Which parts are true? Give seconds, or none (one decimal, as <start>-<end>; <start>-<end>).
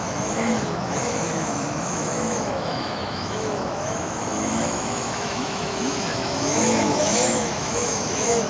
none